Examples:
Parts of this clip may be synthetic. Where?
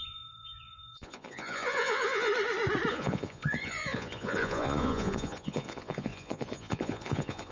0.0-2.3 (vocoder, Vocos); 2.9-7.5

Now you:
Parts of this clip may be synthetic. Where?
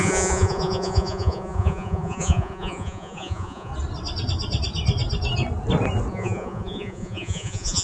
0.0-3.7 (vocoder, Vocos); 6.1-7.8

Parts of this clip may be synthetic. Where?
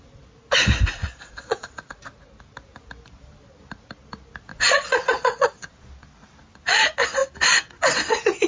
1.0-1.6 (vocoder, Vocos); 4.5-5.9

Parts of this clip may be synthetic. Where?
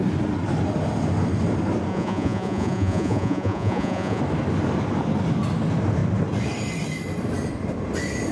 1.9-4.2 (vocoder, Vocos)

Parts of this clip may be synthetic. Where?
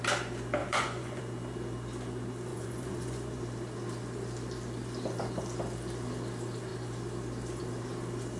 0.6-1.2 (vocoder, Vocos); 2.5-3.4